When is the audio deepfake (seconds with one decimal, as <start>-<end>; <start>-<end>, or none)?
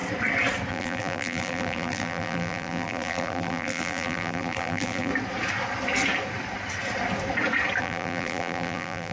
0.7-5.1; 7.8-9.1